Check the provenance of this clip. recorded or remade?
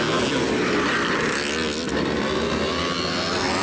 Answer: recorded